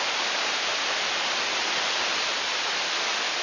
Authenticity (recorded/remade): recorded